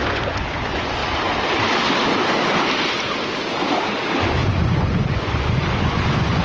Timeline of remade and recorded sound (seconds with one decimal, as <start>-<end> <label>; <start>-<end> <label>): 0.0-1.0 remade; 1.0-4.2 recorded; 4.2-6.4 remade